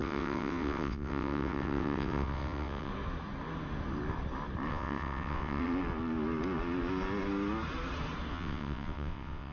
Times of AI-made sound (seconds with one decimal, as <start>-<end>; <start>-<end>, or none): 0.0-2.9; 4.7-5.6; 8.3-9.5